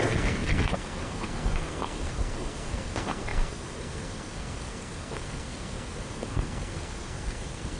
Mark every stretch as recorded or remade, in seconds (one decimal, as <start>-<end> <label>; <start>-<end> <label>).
0.0-7.8 remade